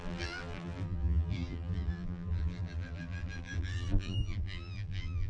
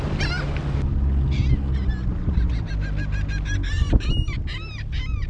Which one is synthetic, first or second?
first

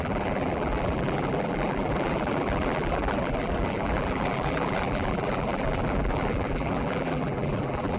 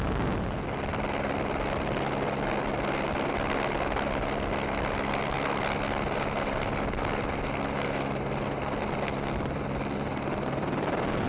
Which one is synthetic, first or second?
first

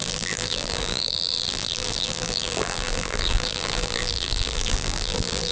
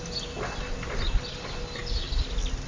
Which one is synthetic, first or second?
first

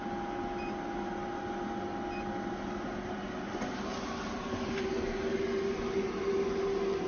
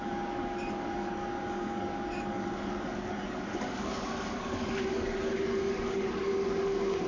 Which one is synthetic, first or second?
second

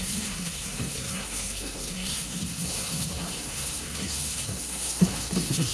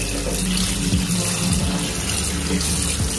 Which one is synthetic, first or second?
first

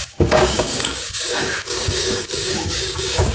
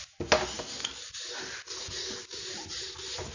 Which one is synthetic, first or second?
first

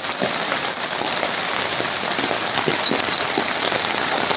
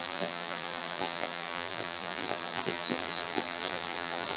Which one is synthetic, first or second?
second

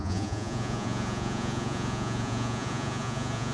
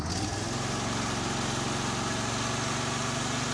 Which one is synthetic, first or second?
first